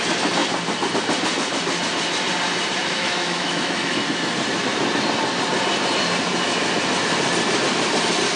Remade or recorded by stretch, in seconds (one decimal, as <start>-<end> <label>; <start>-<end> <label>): 0.0-2.8 recorded; 2.8-4.0 remade; 4.0-8.4 recorded